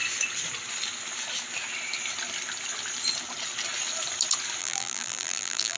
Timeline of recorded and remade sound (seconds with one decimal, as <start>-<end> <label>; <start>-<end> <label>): 0.0-4.6 recorded; 4.6-5.8 remade